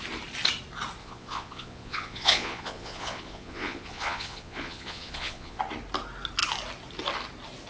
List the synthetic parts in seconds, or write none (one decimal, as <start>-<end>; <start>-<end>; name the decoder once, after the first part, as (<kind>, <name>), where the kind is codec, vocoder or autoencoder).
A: 1.0-5.6 (vocoder, Vocos)